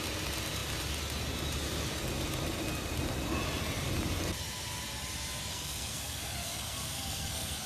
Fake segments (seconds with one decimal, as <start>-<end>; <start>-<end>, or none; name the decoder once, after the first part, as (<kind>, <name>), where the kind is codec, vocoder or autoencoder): 5.5-7.7 (codec, SNAC)